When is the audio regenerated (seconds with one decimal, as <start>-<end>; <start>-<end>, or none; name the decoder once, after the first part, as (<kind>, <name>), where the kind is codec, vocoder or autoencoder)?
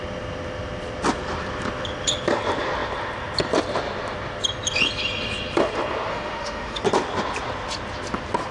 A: 6.1-6.8 (autoencoder, DAC-VAE)